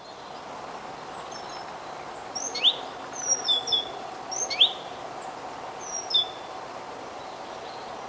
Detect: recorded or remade recorded